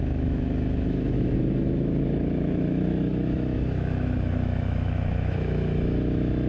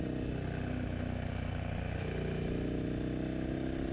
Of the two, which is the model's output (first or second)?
first